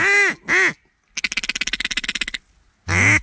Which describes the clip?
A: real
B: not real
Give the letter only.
A